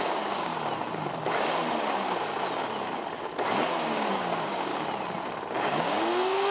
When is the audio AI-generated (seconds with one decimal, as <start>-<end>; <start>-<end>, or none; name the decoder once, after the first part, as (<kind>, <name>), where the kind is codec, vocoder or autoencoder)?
0.0-0.5 (codec, DAC); 4.1-4.7; 5.5-6.5